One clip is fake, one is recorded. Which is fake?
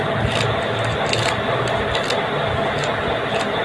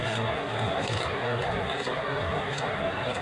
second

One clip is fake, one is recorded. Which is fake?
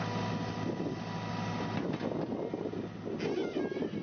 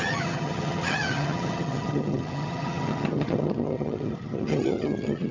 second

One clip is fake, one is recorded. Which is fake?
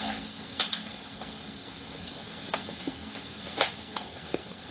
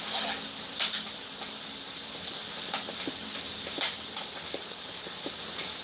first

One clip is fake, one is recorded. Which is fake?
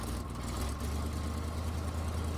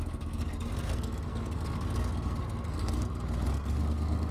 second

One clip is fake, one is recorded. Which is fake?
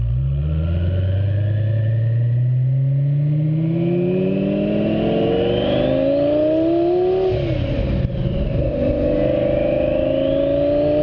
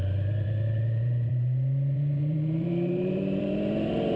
second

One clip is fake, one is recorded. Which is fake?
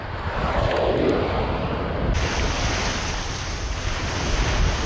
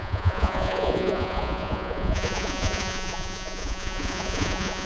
second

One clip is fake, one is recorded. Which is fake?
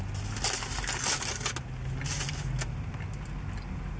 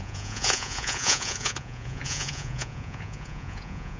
second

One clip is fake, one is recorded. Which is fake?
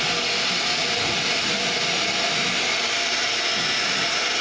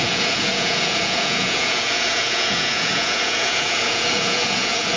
second